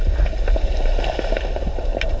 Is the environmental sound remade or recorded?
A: remade